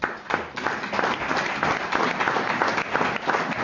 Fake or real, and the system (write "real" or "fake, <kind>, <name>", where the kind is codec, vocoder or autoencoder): real